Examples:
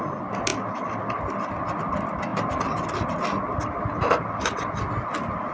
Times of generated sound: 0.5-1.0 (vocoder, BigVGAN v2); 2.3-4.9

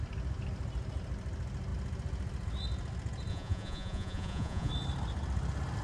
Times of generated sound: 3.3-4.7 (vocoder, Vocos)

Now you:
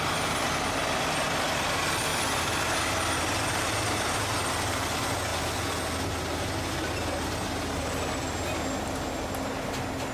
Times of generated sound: none

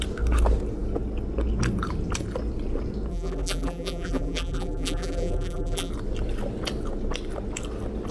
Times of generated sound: 3.1-5.9 (vocoder, BigVGAN v2)